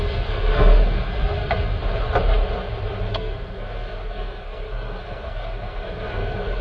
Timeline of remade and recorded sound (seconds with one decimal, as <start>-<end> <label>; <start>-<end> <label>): 0.0-1.8 remade; 1.8-3.1 recorded; 3.1-6.6 remade